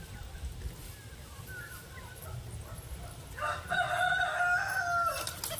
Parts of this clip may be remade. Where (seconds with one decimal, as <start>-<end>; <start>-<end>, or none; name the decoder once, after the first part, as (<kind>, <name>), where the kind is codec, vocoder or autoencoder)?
none